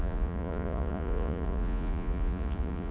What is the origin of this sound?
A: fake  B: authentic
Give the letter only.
A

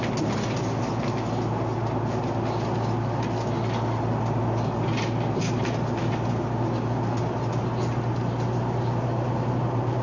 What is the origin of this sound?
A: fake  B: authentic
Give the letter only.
B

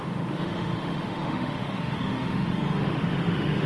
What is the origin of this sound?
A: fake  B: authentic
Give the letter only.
A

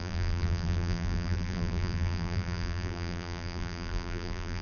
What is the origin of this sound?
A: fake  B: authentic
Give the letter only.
A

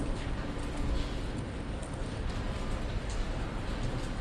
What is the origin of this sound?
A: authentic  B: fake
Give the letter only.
A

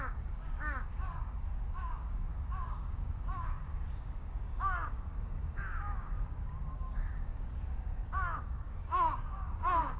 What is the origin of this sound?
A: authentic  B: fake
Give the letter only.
B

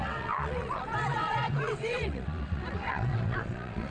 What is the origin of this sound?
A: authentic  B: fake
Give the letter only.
B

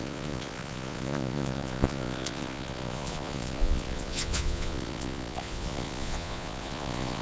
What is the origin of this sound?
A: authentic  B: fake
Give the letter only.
B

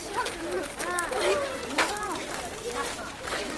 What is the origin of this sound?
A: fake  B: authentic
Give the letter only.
B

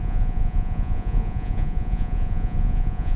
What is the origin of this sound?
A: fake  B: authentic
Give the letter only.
A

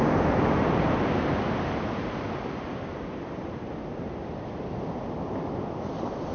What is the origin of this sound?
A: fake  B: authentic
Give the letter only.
A